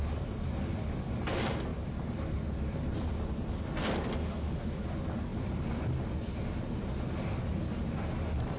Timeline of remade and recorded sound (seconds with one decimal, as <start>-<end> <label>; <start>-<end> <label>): 0.0-4.2 recorded; 4.2-4.8 remade; 4.8-8.6 recorded